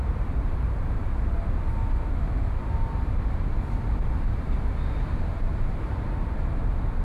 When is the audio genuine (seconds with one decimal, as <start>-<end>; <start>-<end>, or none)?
1.0-5.2